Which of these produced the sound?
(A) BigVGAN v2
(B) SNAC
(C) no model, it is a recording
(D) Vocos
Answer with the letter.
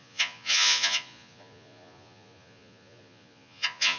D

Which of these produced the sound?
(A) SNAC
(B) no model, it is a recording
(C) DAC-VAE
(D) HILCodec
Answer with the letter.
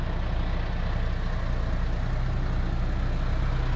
B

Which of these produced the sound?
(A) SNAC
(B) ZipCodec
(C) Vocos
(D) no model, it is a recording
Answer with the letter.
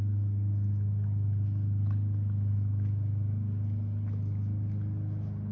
D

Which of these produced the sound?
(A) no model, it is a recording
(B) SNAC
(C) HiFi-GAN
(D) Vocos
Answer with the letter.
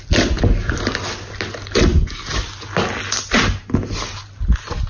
A